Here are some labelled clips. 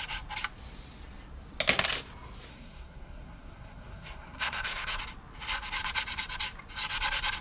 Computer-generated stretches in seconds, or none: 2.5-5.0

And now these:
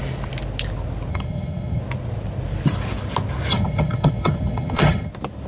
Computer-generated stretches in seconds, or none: 1.1-1.8; 3.5-5.1

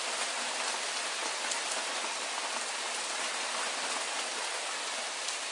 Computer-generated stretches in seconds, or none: none

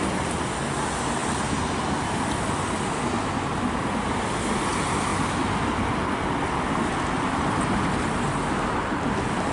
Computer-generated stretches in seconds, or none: none

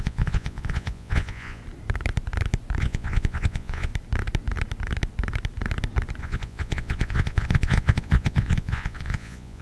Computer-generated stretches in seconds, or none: 0.0-1.6; 2.8-3.9; 6.2-9.6

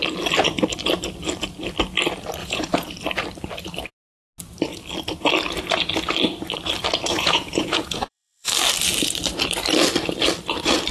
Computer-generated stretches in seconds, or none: 2.4-2.9; 7.1-8.5